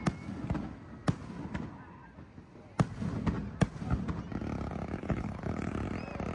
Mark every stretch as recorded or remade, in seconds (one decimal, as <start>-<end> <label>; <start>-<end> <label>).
0.0-5.0 recorded; 5.0-5.7 remade; 5.7-6.3 recorded

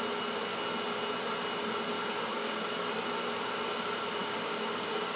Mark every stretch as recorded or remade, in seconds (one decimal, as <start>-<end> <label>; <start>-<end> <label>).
0.0-2.3 recorded; 2.3-2.9 remade; 2.9-4.2 recorded; 4.2-5.2 remade